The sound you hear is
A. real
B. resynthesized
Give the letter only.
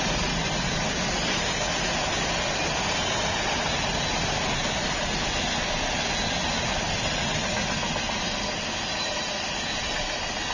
A